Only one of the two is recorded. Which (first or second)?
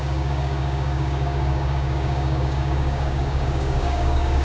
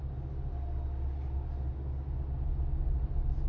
second